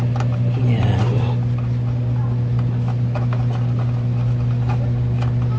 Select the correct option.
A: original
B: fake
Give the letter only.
A